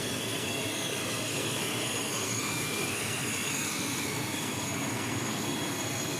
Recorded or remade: remade